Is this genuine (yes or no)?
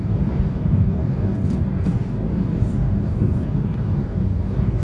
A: no